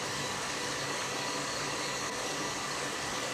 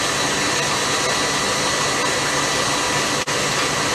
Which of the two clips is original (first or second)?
second